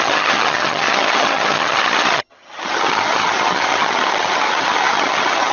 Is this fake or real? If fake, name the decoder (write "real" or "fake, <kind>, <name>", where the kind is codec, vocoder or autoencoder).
fake, vocoder, HiFi-GAN